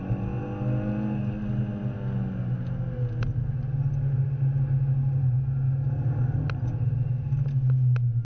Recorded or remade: recorded